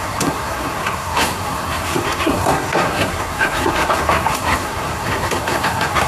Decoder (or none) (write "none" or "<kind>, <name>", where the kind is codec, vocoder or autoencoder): codec, SNAC